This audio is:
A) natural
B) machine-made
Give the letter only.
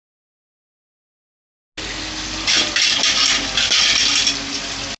A